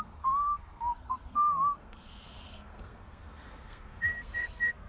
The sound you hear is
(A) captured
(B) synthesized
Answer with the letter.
B